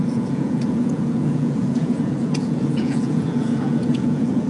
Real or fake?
fake